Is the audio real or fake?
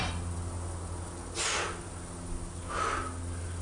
real